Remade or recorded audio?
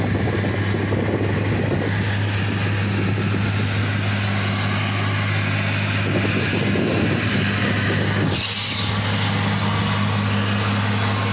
recorded